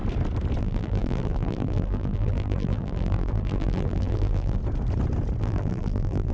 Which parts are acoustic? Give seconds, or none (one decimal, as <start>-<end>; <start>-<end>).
0.0-0.6; 4.6-5.4